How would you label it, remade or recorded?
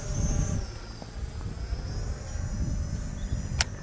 recorded